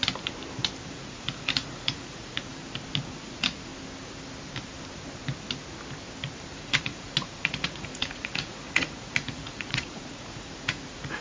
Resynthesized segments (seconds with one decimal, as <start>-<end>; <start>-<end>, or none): 0.9-2.6; 3.1-3.7; 6.5-11.2